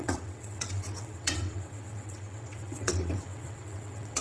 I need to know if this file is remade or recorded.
remade